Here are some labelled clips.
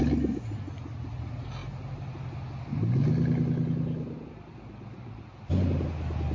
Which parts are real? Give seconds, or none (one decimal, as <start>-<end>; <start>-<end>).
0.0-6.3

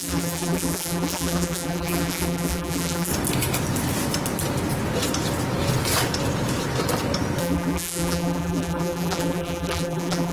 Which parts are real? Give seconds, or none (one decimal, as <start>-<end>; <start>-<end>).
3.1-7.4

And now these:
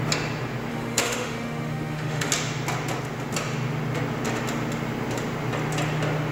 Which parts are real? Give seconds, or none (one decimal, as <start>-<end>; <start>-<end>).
0.0-0.7; 2.3-6.3

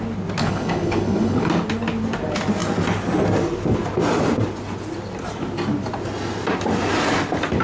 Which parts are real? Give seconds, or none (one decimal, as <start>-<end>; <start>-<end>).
0.0-0.4; 1.5-7.6

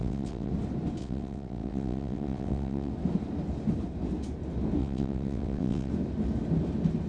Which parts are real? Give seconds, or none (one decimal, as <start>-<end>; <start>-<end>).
0.5-1.0; 2.9-4.8; 5.9-7.1